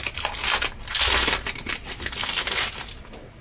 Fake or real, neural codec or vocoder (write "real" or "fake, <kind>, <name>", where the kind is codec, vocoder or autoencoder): real